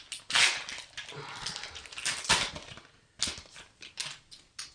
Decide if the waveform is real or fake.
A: real